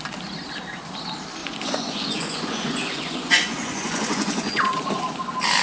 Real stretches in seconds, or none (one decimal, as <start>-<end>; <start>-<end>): 0.0-1.4; 4.8-5.6